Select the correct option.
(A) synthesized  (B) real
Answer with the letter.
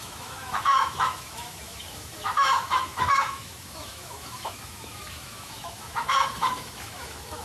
A